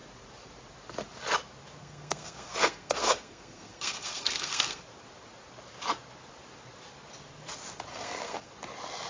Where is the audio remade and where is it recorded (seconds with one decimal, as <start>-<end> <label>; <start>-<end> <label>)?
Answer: 0.0-1.8 recorded; 1.8-4.8 remade; 4.8-7.9 recorded; 7.9-8.5 remade; 8.5-9.1 recorded